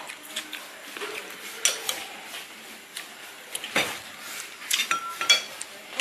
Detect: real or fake real